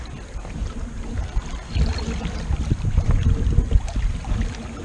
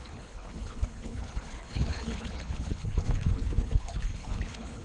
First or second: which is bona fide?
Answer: first